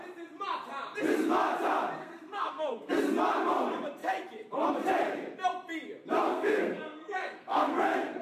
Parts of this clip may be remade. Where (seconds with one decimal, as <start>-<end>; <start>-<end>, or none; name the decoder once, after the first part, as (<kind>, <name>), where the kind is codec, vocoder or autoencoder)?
2.0-2.9 (codec, SNAC); 6.3-8.2